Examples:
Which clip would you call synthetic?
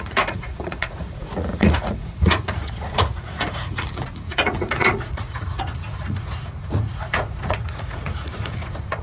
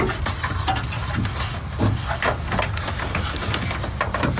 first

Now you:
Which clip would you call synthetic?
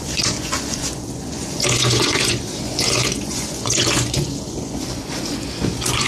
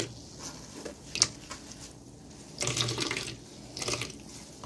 first